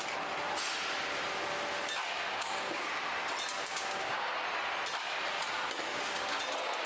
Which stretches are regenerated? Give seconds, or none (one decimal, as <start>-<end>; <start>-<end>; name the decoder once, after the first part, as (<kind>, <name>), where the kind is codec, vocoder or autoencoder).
2.3-2.9 (codec, DAC); 3.6-4.3; 5.9-6.4